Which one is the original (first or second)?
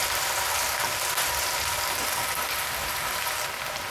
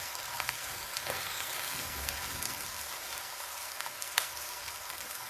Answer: first